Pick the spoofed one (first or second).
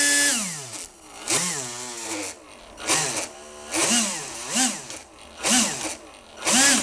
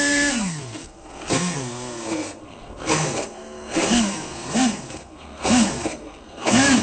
second